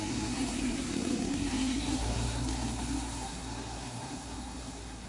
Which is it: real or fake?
fake